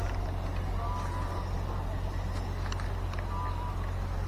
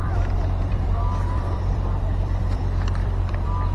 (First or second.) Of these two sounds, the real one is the first